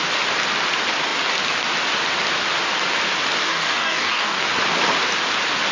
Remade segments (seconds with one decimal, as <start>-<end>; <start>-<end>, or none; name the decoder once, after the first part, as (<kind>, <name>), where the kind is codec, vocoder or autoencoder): 3.4-4.4 (codec, DAC)